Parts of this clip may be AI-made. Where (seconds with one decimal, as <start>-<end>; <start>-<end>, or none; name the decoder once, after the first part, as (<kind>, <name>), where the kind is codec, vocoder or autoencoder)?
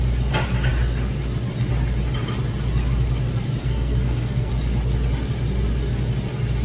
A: 3.6-4.5 (codec, SNAC)